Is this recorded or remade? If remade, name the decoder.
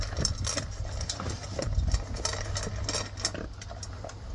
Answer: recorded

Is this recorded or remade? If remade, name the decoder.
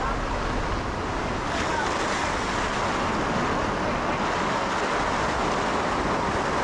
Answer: recorded